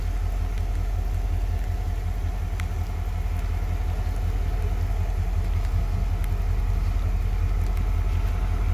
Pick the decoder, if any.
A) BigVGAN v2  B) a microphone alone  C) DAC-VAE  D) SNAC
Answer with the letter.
B